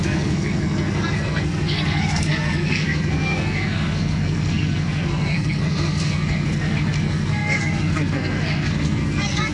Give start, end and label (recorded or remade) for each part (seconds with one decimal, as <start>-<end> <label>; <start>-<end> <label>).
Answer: 0.0-9.5 remade